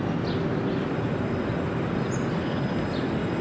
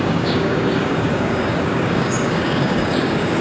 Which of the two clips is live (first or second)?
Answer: first